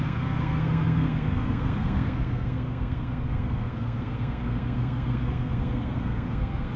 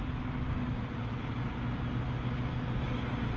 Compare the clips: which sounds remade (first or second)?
first